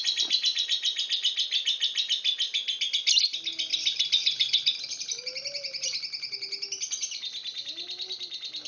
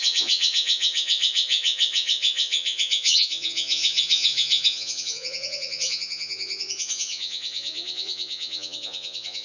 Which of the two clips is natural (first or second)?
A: first